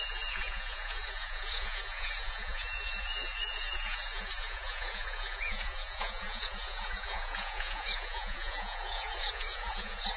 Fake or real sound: fake